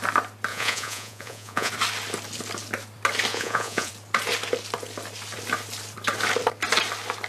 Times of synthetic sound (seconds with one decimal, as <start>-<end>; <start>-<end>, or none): 0.5-1.7; 3.3-3.9